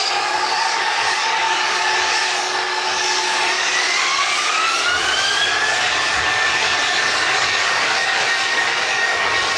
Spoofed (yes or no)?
yes